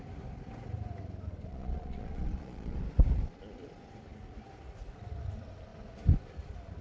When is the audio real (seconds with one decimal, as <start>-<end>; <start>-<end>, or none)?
0.0-1.5; 2.8-6.8

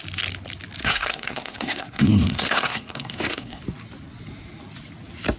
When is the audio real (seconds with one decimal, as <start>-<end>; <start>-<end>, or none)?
0.0-0.8; 3.6-5.4

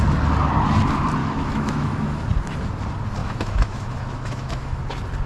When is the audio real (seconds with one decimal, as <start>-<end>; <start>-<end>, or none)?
0.0-1.2; 2.2-3.2; 4.8-5.3

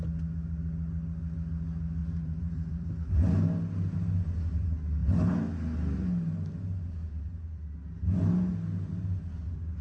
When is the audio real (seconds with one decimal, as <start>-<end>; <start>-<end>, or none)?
0.0-2.0; 2.9-9.8

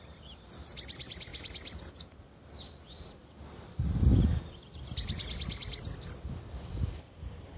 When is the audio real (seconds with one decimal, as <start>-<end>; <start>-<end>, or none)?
0.0-7.6

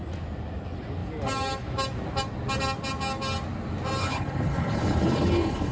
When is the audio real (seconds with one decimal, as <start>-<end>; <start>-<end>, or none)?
0.0-4.0

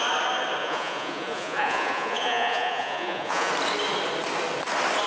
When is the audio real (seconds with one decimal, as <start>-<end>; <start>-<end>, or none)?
0.0-0.6; 3.5-5.1